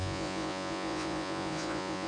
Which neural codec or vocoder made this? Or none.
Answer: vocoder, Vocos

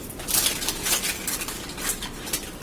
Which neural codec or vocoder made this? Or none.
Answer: none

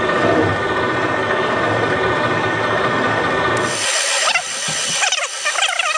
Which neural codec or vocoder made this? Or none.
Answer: none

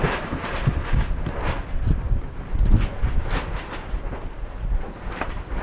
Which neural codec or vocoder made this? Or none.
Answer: none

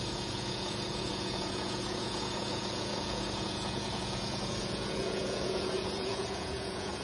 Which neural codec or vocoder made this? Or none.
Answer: vocoder, Vocos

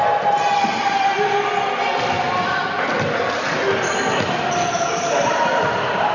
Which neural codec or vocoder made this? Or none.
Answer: none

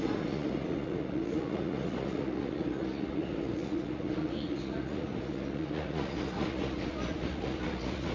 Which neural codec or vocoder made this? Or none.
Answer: vocoder, Vocos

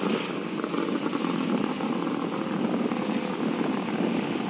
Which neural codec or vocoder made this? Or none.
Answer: none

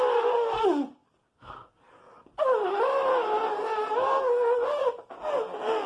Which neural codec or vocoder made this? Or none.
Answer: none